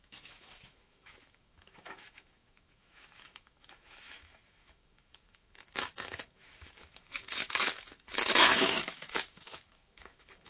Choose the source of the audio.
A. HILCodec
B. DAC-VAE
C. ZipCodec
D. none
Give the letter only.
B